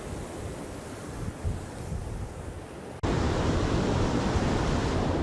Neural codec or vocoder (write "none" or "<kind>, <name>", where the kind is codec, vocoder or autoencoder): none